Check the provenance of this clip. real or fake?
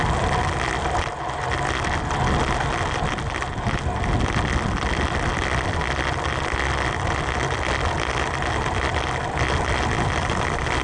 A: real